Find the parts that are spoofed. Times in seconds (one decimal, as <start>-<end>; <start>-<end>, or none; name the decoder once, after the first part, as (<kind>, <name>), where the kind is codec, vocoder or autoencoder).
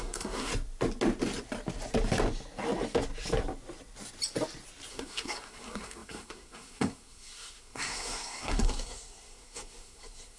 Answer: 0.0-0.5 (codec, SNAC); 4.9-10.4